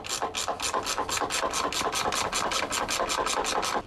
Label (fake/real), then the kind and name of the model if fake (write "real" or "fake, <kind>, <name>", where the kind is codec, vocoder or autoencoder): real